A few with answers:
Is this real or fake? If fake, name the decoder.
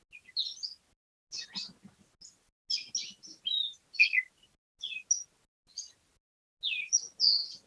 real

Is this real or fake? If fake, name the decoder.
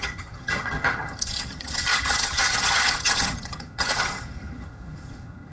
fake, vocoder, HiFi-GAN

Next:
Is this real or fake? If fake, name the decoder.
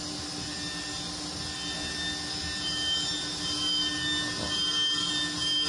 real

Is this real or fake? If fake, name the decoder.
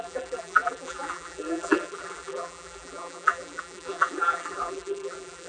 fake, vocoder, BigVGAN v2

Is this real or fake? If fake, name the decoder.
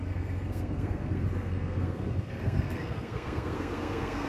fake, codec, SNAC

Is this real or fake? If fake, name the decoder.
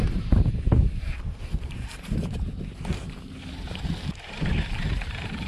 fake, vocoder, BigVGAN v2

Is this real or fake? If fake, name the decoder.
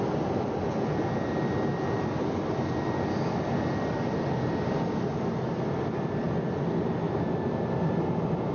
real